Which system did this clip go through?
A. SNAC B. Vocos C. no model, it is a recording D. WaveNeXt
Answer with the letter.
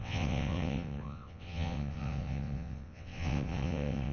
D